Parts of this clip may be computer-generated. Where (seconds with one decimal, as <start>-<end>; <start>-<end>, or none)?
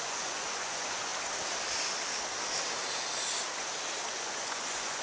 0.0-1.1; 4.1-5.0